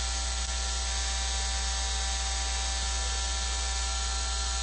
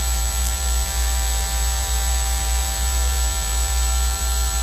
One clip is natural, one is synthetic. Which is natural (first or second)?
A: first